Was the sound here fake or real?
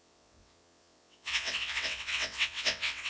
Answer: fake